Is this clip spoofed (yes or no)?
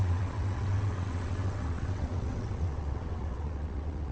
yes